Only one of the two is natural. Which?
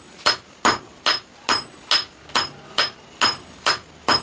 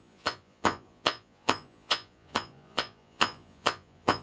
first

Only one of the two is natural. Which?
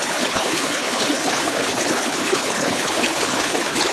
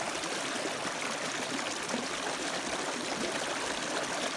second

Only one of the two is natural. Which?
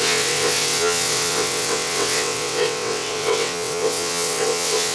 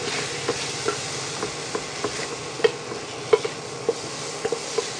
second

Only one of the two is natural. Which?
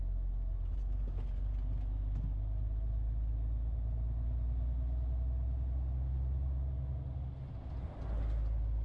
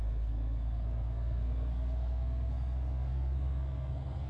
first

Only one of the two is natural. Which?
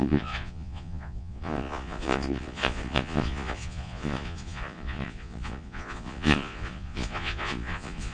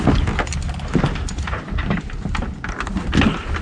second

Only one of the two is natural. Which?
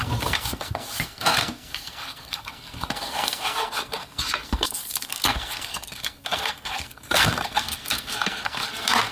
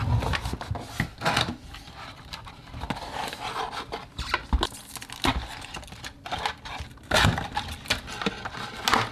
second